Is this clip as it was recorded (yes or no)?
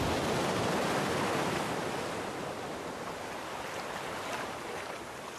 yes